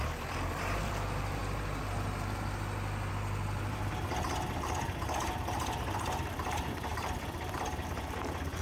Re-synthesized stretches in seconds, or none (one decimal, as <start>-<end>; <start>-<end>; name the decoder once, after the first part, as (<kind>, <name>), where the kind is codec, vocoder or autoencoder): 0.0-1.4 (vocoder, BigVGAN v2); 3.1-4.0; 5.2-8.6